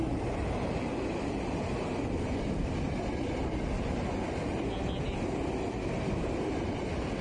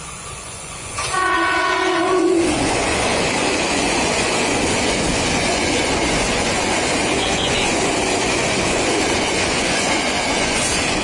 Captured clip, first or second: first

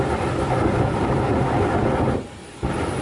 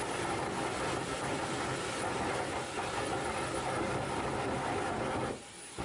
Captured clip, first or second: second